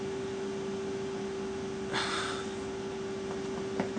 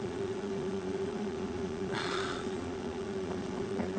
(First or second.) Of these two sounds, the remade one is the second